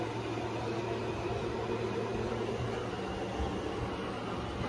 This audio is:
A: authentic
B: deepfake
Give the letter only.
A